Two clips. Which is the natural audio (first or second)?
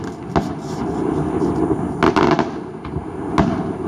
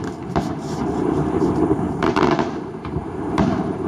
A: first